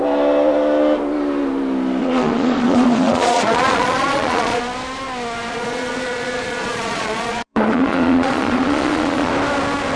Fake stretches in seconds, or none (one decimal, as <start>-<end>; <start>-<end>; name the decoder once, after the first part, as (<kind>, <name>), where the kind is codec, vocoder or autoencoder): 2.0-4.6 (vocoder, Vocos); 5.5-9.3